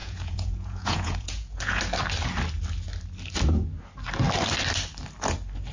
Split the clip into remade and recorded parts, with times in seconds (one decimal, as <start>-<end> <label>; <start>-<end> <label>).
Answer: 0.0-1.8 remade; 1.8-5.7 recorded